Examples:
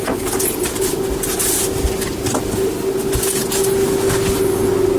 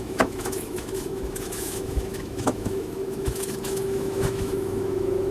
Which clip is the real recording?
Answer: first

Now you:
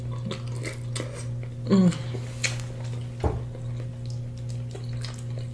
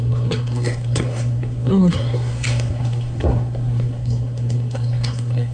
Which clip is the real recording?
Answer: first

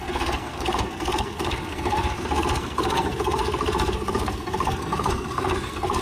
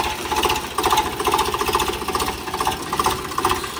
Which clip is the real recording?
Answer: second